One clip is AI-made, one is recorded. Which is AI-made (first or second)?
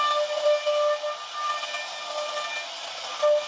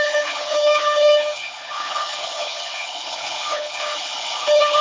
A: second